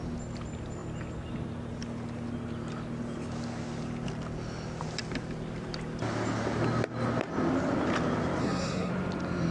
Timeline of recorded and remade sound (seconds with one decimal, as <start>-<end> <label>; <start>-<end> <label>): 0.0-8.4 recorded; 8.4-8.9 remade; 8.9-9.5 recorded